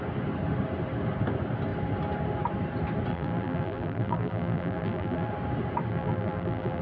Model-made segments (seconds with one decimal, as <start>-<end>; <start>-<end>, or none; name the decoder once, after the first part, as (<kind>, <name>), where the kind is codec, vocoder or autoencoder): 3.1-5.3 (vocoder, BigVGAN v2); 5.9-6.8